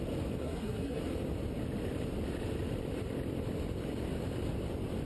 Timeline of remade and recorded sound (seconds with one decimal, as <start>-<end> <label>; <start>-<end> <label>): 0.0-0.4 recorded; 0.4-1.0 remade; 1.0-5.1 recorded